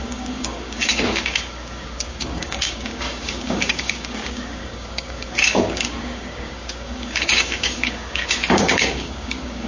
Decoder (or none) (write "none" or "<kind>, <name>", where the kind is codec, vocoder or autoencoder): codec, DAC